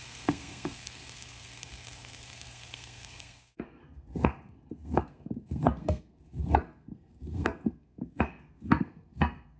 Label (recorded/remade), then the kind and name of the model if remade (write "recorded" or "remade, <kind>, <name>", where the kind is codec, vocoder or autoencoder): remade, codec, SNAC